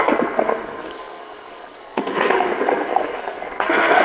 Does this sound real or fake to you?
fake